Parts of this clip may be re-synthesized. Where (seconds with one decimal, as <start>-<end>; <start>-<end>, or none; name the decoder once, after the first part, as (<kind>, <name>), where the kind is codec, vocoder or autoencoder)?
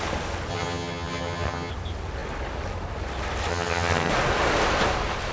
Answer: 0.5-1.7 (vocoder, HiFi-GAN); 3.5-4.1